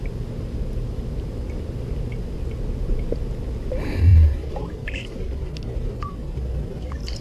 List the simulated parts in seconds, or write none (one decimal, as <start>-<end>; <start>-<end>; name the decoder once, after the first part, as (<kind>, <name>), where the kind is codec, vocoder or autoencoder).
4.1-5.5 (vocoder, BigVGAN v2)